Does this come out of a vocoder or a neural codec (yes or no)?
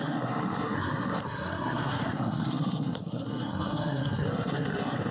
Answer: yes